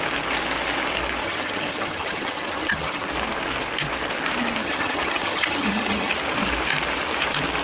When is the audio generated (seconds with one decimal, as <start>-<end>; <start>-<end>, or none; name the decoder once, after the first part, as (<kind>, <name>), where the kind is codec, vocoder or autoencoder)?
1.2-3.1 (vocoder, HiFi-GAN); 4.6-6.1